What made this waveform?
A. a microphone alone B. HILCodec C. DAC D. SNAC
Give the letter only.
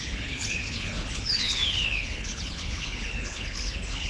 B